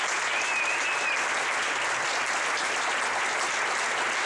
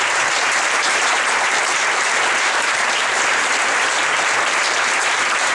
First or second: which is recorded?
first